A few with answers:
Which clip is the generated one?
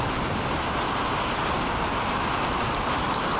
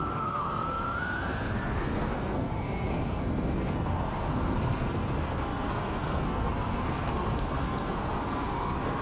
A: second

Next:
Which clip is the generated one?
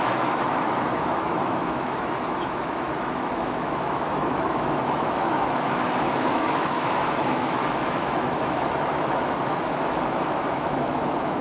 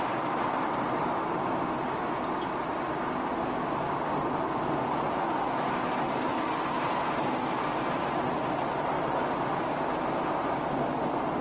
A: first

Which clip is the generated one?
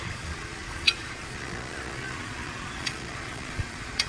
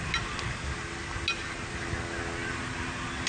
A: first